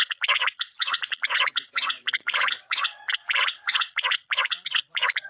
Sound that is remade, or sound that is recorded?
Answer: remade